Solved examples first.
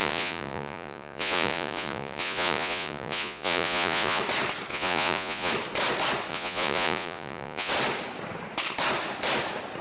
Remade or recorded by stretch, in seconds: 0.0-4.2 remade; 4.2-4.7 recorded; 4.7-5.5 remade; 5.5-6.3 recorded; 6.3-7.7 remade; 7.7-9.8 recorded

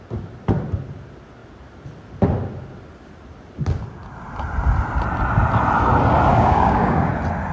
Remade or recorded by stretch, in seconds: 0.0-6.3 recorded; 6.3-7.1 remade; 7.1-7.5 recorded

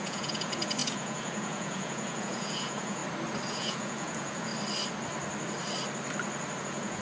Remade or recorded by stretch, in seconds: 0.0-3.0 remade; 3.0-3.5 recorded; 3.5-4.5 remade; 4.5-6.6 recorded; 6.6-7.0 remade

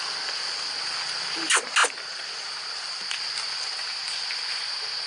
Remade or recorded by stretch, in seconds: 0.0-5.1 recorded

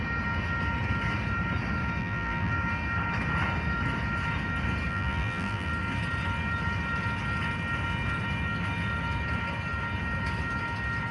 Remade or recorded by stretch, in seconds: 0.0-2.0 recorded; 2.0-2.5 remade; 2.5-4.9 recorded; 4.9-5.7 remade; 5.7-11.1 recorded

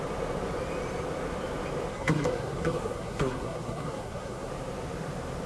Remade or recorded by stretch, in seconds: 0.0-1.9 recorded; 1.9-4.5 remade; 4.5-5.5 recorded

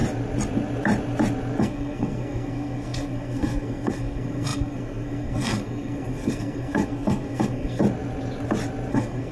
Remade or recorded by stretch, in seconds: 0.0-1.6 recorded; 1.6-7.8 remade; 7.8-8.9 recorded; 8.9-9.3 remade